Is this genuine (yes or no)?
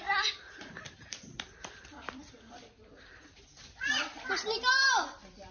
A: no